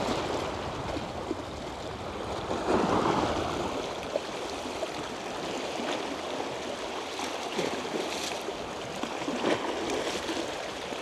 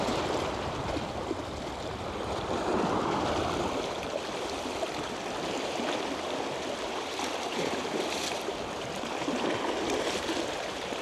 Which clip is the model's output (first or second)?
second